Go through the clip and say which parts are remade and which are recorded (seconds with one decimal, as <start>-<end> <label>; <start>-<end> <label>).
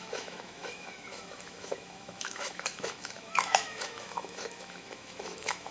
0.0-5.7 remade